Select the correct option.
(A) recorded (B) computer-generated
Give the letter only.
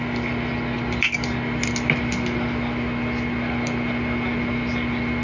A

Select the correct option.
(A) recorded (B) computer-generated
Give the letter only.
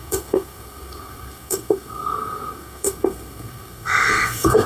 B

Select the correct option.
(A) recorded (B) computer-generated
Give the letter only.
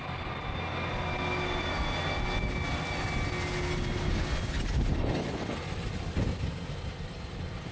A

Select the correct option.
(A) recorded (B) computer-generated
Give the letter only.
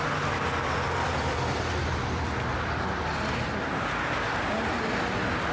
A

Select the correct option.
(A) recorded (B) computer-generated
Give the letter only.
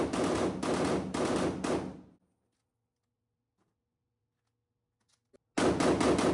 A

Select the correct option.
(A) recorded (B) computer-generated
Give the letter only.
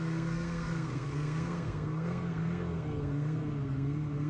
B